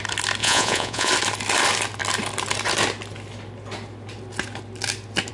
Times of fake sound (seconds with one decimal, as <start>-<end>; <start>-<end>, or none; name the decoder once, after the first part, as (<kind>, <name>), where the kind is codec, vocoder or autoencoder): 0.4-1.1 (vocoder, Vocos)